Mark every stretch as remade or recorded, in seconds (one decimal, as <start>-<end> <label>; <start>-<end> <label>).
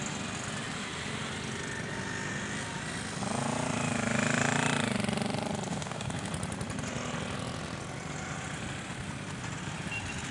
0.0-5.7 recorded; 5.7-6.3 remade; 6.3-10.3 recorded